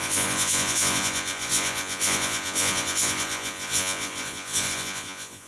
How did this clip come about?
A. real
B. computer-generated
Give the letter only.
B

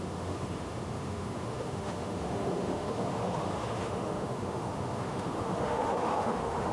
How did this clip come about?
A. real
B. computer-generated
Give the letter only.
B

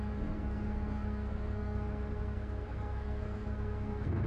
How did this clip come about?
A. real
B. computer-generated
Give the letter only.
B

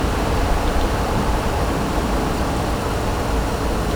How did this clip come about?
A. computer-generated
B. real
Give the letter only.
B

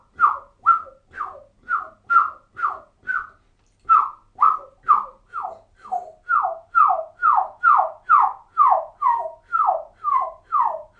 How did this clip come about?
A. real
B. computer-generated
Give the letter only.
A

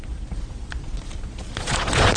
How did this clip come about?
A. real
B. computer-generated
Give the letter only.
B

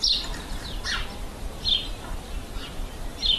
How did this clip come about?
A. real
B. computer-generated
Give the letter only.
A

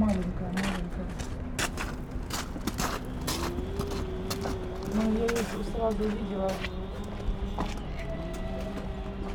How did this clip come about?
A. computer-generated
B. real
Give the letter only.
B